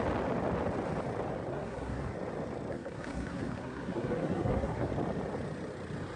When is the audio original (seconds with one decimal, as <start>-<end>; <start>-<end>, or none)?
0.0-1.5; 2.1-2.7; 4.9-6.2